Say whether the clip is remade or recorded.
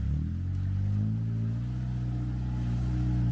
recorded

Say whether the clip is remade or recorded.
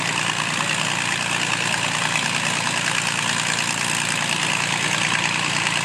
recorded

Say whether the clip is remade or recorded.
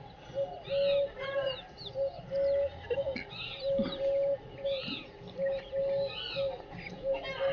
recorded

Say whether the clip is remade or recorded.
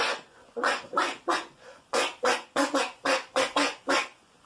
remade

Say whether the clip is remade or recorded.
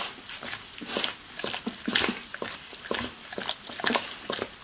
recorded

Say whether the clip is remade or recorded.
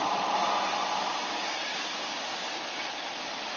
recorded